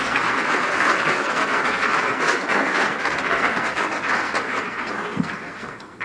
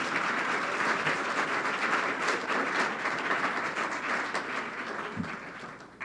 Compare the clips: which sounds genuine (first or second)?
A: second